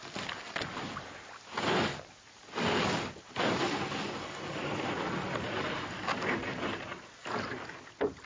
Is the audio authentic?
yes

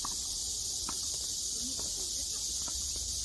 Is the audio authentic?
yes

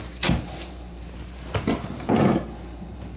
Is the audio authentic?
no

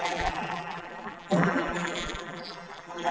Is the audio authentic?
no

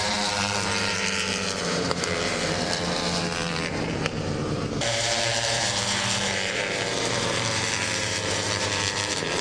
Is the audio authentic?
no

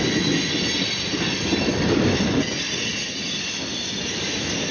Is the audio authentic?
yes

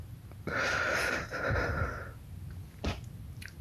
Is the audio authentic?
yes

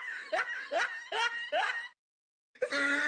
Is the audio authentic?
yes